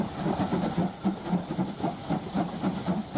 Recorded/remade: recorded